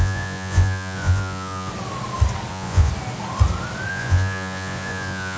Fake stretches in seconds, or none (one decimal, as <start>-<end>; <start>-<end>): 0.0-1.7; 2.5-2.9; 3.9-5.4